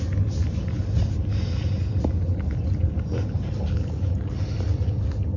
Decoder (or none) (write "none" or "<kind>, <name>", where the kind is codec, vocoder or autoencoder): none